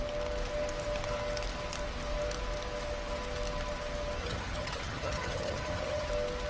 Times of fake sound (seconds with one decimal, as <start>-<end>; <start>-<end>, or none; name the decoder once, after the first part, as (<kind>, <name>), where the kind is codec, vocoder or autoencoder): 4.2-6.1 (vocoder, HiFi-GAN)